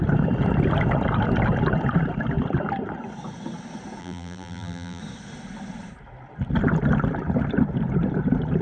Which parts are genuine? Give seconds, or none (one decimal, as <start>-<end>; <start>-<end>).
0.0-4.0; 5.0-8.6